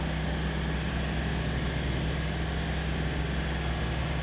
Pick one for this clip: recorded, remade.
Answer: recorded